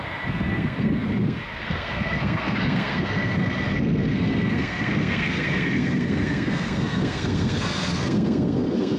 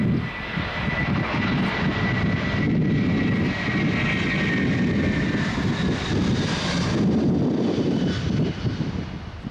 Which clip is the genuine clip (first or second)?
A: second